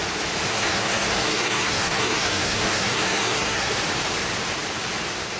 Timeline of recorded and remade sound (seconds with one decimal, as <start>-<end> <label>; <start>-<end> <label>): 0.0-0.5 recorded; 0.5-3.7 remade; 3.7-5.4 recorded